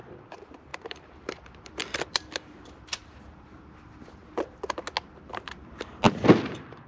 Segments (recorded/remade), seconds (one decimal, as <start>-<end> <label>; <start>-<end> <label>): 0.0-4.2 remade; 4.2-5.3 recorded; 5.3-6.9 remade